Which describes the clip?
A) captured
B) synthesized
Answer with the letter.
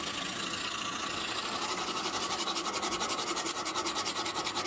A